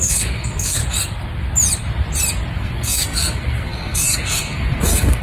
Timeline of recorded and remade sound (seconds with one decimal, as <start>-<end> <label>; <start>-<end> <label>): 0.0-0.8 remade; 0.8-2.5 recorded; 2.5-5.2 remade